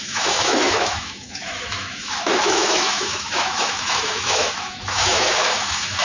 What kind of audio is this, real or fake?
fake